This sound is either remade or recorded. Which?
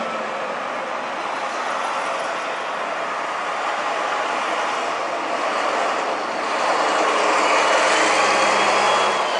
recorded